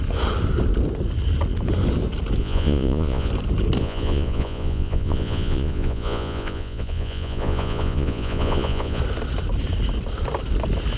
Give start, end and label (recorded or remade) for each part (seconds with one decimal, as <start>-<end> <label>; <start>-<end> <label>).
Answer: 0.0-2.4 recorded; 2.4-3.3 remade; 3.3-3.8 recorded; 3.8-9.0 remade; 9.0-11.0 recorded

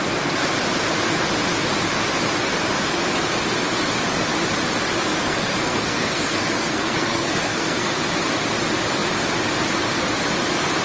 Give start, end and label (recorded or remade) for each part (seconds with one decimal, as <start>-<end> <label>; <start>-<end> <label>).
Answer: 0.0-5.2 recorded; 5.2-7.9 remade; 7.9-10.8 recorded

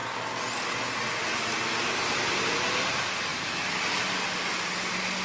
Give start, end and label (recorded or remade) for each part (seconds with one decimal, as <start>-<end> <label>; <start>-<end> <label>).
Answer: 0.0-3.3 recorded; 3.3-3.8 remade; 3.8-5.2 recorded

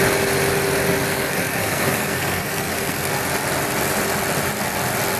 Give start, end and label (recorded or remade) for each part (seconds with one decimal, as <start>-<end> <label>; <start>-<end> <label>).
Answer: 0.0-1.1 recorded; 1.1-3.3 remade; 3.3-5.2 recorded

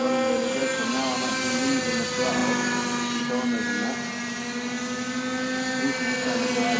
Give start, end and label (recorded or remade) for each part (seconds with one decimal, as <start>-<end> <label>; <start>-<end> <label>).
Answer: 0.0-6.8 recorded

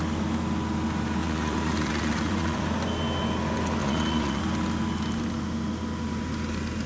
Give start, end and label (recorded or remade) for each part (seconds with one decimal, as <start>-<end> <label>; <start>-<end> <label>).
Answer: 0.0-1.2 recorded; 1.2-2.6 remade; 2.6-3.8 recorded; 3.8-4.4 remade; 4.4-6.9 recorded

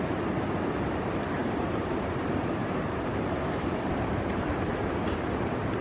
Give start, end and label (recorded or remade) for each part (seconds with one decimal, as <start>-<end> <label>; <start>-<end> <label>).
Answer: 0.0-1.4 recorded; 1.4-2.2 remade; 2.2-2.6 recorded; 2.6-5.3 remade; 5.3-5.8 recorded